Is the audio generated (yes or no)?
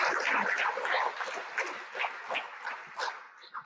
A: no